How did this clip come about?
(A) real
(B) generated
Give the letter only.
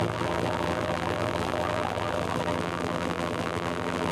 B